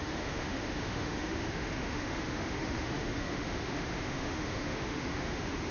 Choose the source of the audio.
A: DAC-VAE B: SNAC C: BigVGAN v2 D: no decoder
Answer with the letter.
A